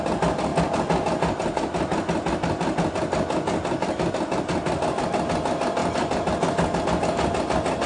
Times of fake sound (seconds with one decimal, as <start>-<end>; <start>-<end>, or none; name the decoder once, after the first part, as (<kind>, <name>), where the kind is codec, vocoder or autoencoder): none